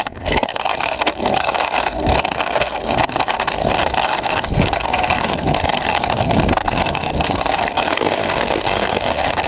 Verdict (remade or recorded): remade